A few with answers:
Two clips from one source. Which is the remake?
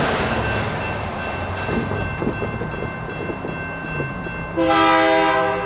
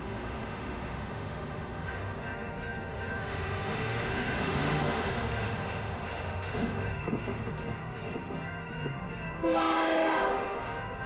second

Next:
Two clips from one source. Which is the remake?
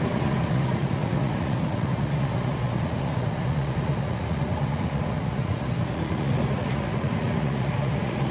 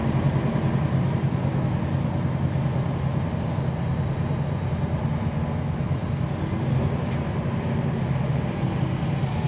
first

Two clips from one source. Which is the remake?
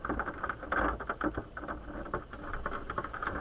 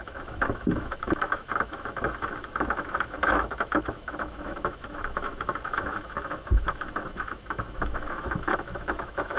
second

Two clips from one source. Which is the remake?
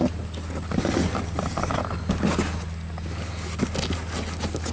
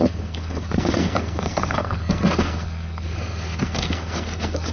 second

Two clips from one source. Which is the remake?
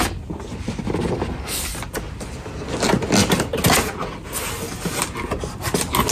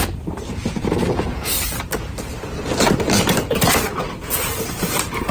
second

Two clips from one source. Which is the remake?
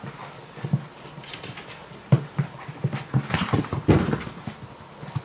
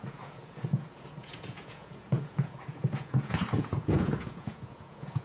second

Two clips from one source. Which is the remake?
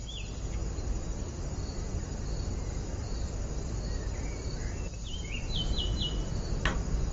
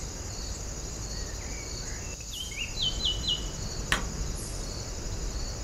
first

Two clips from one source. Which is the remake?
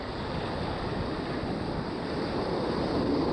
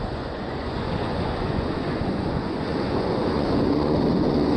second